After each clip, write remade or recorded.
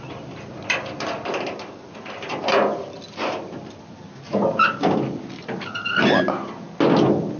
recorded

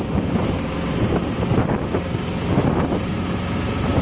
recorded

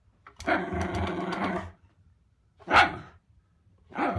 recorded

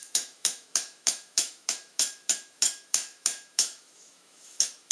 remade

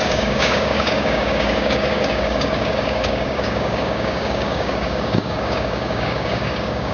remade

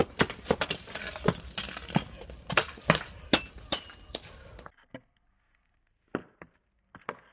recorded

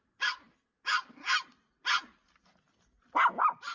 recorded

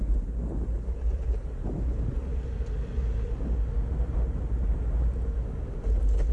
recorded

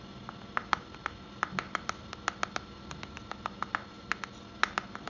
recorded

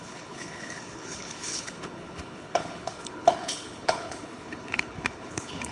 remade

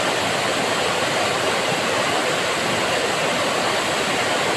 remade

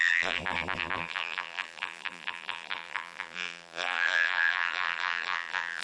remade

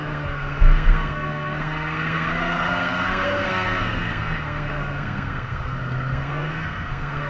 remade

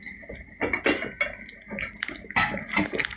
recorded